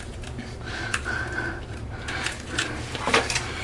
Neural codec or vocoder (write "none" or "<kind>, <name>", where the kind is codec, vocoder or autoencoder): vocoder, BigVGAN v2